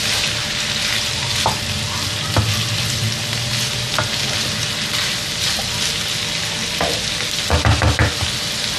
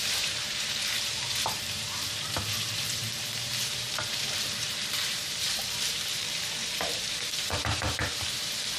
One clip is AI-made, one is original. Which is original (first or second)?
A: first